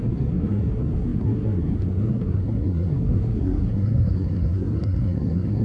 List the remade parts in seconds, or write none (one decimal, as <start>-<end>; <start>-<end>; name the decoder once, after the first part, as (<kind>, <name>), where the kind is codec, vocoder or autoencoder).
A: 0.0-5.6 (codec, SNAC)